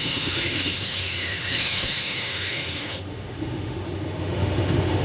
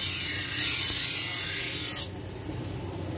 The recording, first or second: second